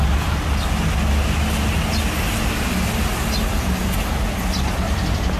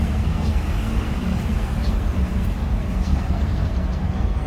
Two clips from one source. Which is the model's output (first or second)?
second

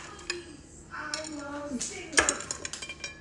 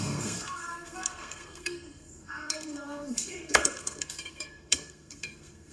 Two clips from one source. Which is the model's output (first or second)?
second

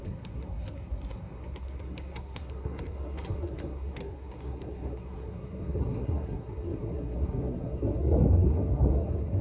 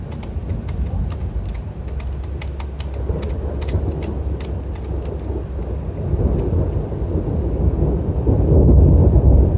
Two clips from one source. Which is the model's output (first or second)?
first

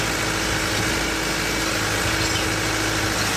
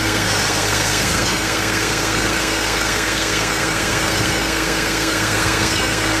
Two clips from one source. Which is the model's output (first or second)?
second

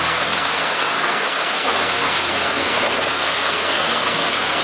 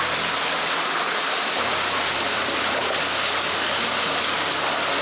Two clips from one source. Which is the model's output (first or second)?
first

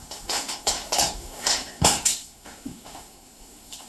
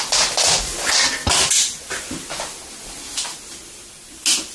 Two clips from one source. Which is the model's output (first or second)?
first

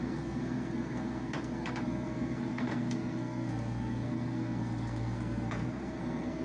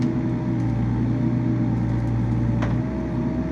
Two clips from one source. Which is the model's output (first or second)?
first